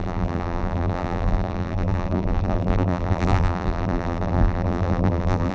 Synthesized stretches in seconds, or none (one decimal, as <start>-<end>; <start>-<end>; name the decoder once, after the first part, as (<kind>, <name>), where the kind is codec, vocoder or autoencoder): 0.0-5.5 (vocoder, BigVGAN v2)